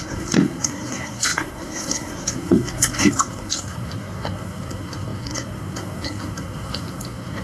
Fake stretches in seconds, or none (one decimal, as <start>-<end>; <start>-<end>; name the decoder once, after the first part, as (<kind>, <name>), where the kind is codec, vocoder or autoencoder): 0.0-7.4 (codec, SNAC)